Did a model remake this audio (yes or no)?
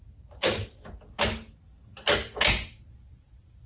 no